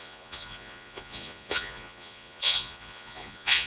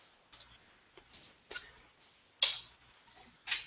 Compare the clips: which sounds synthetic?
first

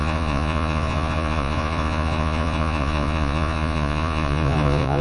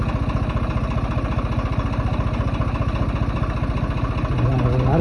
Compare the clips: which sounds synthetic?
first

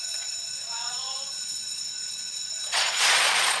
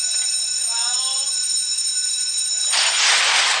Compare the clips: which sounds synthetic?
first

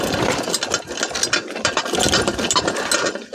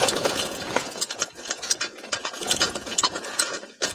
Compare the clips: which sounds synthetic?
second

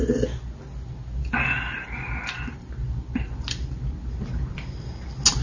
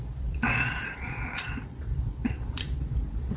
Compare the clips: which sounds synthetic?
second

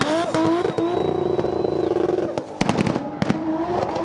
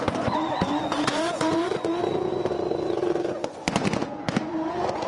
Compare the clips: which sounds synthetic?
second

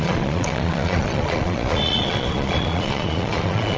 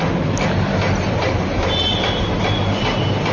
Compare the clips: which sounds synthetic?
first